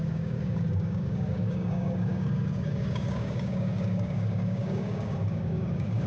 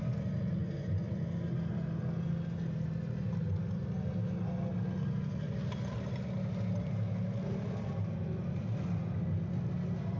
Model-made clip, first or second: first